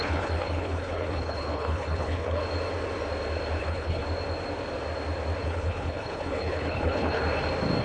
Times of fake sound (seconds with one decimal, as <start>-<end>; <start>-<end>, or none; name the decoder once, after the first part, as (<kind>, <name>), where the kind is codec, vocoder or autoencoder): 0.0-2.4 (codec, HILCodec); 3.6-4.0; 5.4-7.2

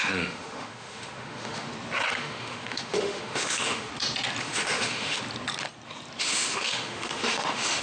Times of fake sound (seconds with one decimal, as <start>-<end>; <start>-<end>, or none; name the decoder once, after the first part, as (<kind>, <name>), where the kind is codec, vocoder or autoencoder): 0.0-1.7 (autoencoder, DAC-VAE); 2.2-3.9; 4.4-5.2; 6.2-7.8

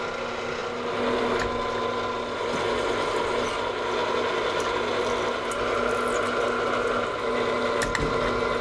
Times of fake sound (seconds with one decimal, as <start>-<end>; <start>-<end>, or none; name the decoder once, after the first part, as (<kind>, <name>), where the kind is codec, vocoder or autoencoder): none

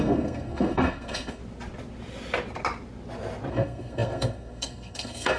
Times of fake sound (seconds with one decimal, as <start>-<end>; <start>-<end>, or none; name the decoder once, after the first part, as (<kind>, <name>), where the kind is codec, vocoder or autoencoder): 0.0-1.4 (codec, SNAC); 3.5-5.4

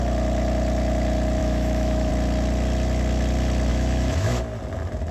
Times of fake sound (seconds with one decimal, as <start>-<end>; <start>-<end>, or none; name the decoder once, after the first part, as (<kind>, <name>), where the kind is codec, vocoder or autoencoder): 1.4-2.1 (autoencoder, DAC-VAE); 3.7-4.4

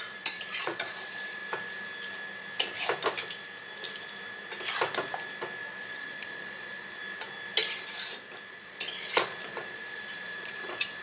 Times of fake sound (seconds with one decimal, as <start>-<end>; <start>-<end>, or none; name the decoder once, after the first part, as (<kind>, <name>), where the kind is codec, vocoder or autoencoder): 0.0-1.4 (vocoder, Vocos); 5.7-7.0; 8.5-11.0

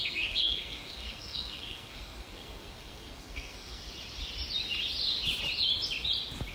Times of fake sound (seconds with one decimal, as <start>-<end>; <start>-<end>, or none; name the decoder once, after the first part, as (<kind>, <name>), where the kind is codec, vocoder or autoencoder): 0.0-3.8 (codec, SNAC)

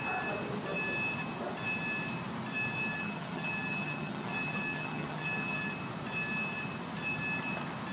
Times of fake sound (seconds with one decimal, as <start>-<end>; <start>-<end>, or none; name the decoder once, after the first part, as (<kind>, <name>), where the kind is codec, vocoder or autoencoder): 2.9-5.7 (vocoder, HiFi-GAN)